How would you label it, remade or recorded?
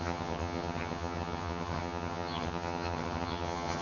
remade